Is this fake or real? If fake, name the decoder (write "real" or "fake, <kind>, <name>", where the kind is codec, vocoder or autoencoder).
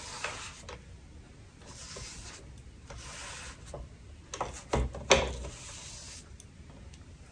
real